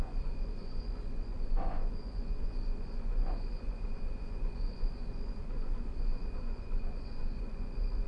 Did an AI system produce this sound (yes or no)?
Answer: yes